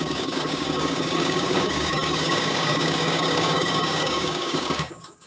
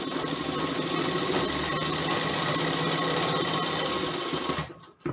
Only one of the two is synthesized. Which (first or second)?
first